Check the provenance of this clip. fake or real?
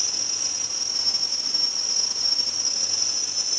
real